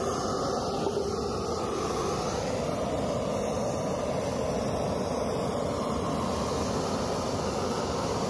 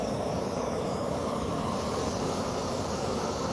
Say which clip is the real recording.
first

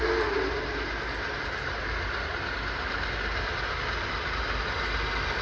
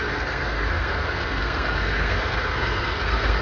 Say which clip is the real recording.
first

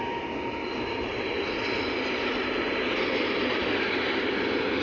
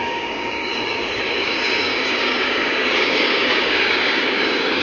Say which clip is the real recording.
first